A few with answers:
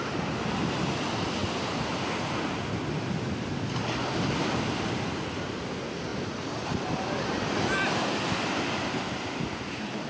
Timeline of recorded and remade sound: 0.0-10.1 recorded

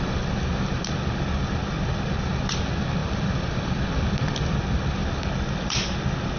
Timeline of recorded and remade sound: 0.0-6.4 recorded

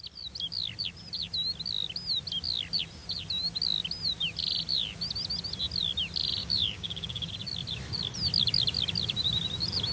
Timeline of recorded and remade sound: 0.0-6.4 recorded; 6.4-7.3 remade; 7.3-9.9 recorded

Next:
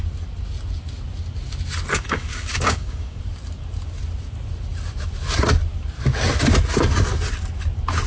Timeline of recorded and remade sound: 0.0-1.9 recorded; 1.9-3.2 remade; 3.2-8.1 recorded